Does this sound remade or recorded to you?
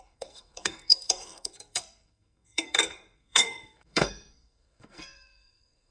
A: remade